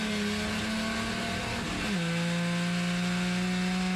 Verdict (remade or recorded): recorded